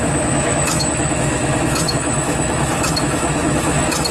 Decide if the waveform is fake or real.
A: fake